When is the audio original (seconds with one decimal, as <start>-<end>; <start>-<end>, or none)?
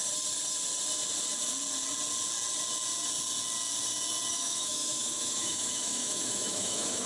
0.0-4.3